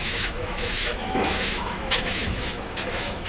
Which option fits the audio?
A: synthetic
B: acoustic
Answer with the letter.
A